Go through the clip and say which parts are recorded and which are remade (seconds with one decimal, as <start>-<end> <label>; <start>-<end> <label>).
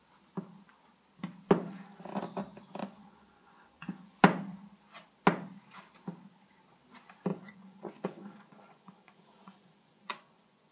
0.0-2.8 recorded; 2.8-4.2 remade; 4.2-7.3 recorded; 7.3-10.7 remade